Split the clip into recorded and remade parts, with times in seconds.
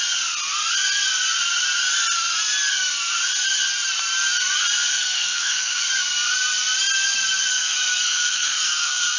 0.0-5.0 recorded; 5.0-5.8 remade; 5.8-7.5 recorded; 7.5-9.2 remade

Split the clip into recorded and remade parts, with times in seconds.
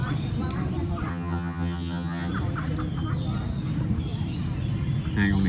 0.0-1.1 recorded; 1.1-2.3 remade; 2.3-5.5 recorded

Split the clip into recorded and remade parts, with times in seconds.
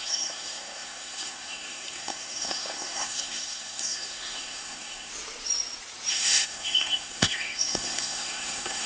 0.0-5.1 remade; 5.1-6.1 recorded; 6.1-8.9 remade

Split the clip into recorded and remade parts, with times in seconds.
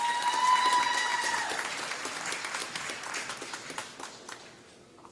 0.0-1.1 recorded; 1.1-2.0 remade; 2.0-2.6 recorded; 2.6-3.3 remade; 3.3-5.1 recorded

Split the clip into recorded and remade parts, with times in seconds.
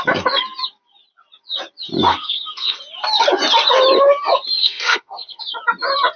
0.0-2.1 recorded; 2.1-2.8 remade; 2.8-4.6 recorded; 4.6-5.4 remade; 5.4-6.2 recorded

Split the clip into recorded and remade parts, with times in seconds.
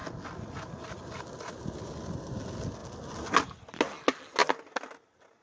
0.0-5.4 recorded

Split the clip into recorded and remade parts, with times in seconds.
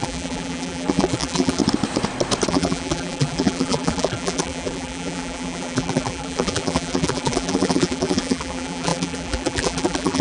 0.0-1.6 remade; 1.6-2.5 recorded; 2.5-10.2 remade